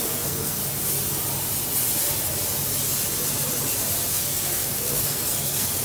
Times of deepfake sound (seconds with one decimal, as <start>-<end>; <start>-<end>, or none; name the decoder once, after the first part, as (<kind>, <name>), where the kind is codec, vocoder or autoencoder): 0.0-0.6 (codec, SNAC); 4.1-5.8